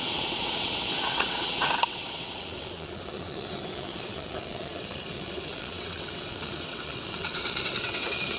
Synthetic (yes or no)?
yes